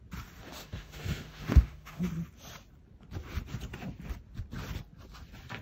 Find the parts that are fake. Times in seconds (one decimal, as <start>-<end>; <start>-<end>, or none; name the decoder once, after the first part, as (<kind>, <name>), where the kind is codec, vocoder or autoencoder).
0.6-2.0 (autoencoder, DAC-VAE)